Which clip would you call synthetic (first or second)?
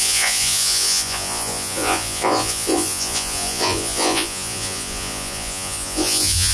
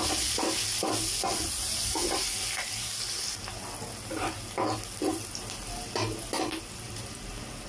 first